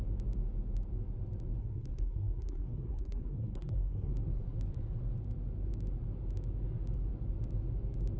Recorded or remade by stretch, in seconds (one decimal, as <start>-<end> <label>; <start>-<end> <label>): 0.0-1.6 recorded; 1.6-4.1 remade; 4.1-8.2 recorded